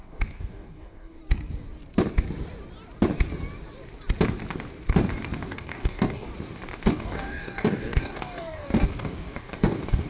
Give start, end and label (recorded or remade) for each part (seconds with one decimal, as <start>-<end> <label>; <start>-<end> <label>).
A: 0.0-1.2 remade; 1.2-5.5 recorded; 5.5-6.3 remade; 6.3-6.9 recorded; 6.9-10.1 remade